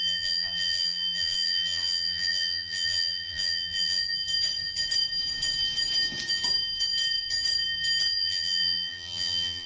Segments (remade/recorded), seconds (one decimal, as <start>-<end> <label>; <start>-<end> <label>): 0.0-4.0 remade; 4.0-8.2 recorded; 8.2-9.7 remade